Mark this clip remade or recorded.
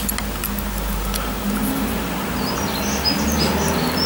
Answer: recorded